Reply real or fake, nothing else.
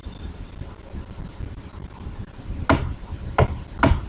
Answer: real